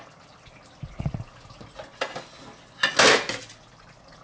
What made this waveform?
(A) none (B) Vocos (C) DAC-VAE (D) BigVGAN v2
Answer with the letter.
A